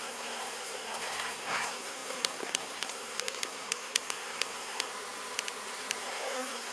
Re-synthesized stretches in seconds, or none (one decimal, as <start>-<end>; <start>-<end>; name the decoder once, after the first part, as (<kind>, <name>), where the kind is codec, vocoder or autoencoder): 0.0-4.9 (codec, SNAC); 6.0-6.7